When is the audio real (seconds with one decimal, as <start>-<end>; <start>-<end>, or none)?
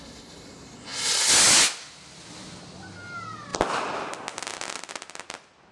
0.0-5.7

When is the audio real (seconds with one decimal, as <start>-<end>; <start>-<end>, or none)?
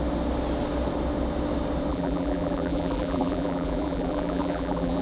0.0-1.9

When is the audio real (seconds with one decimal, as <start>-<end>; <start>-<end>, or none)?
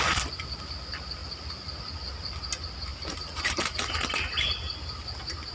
0.0-1.2; 2.1-2.9; 3.7-5.5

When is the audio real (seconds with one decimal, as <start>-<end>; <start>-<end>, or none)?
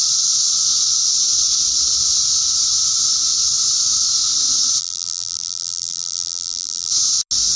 0.0-4.8; 6.9-7.6